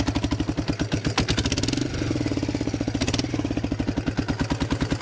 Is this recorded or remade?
recorded